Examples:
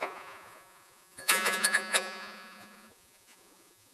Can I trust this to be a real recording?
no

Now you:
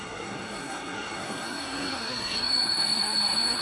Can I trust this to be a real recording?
no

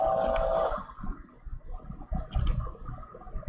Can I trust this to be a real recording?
yes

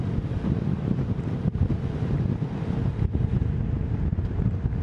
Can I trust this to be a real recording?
yes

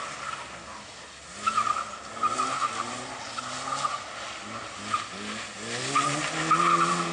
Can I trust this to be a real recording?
yes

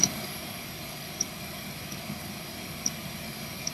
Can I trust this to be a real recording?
no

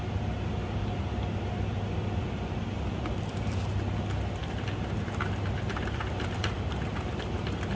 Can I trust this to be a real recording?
yes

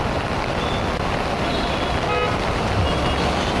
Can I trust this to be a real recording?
yes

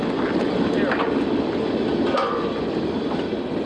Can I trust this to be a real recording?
yes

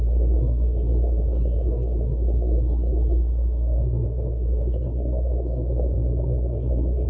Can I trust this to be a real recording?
no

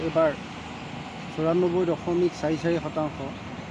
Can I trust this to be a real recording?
yes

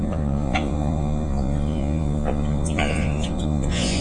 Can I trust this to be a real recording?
no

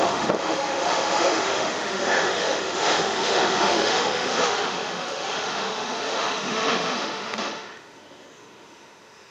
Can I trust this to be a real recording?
no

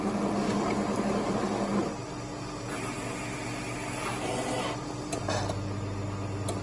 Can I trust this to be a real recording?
yes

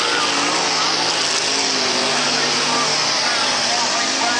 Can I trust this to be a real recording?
yes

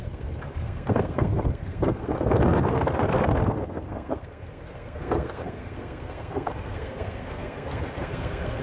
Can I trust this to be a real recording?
no